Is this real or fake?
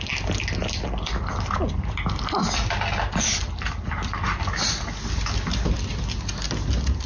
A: real